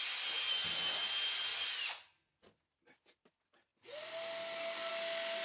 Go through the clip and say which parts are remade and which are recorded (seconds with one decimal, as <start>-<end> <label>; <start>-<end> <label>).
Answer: 0.0-5.4 recorded